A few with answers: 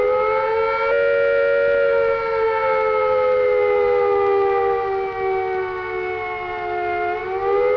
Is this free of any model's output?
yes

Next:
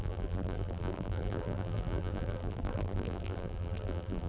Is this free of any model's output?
no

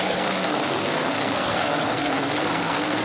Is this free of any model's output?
no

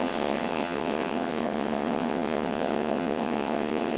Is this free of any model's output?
no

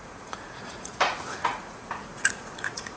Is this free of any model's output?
no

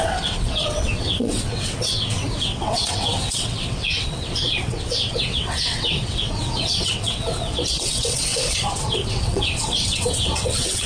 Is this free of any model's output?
no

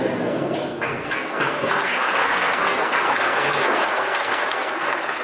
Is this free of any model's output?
no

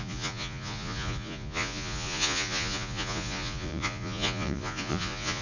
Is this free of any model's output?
no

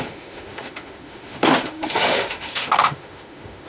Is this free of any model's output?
no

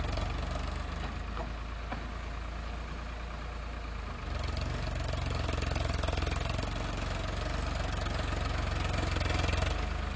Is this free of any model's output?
yes